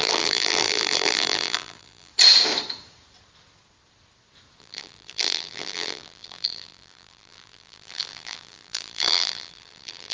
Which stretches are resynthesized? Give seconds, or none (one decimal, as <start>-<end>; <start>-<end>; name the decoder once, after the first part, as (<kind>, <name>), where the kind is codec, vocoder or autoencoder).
0.0-2.1 (vocoder, BigVGAN v2); 4.6-10.1